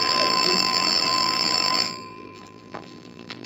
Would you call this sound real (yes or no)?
no